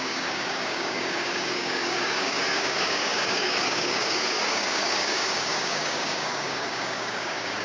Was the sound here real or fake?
fake